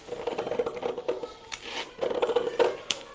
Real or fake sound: real